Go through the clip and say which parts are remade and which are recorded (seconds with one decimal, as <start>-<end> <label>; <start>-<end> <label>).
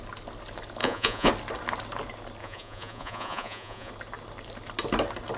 0.0-0.8 recorded; 0.8-1.3 remade; 1.3-2.4 recorded; 2.4-3.9 remade; 3.9-5.4 recorded